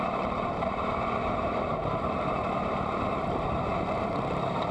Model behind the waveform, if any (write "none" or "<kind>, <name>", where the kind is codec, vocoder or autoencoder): vocoder, BigVGAN v2